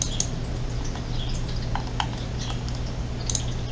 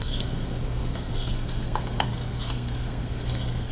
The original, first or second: first